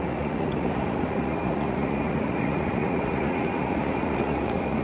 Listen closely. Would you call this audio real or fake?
fake